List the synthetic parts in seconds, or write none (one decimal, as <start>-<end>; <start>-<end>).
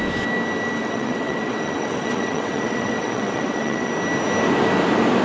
0.8-3.9